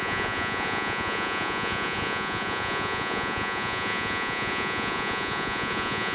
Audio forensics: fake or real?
fake